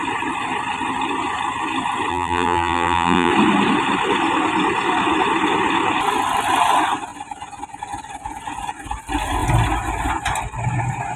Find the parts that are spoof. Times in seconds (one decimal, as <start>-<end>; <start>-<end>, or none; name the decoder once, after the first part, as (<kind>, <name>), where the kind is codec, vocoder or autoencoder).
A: 2.1-3.3 (vocoder, BigVGAN v2)